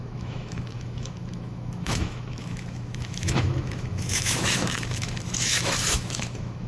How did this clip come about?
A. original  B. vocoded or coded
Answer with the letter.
B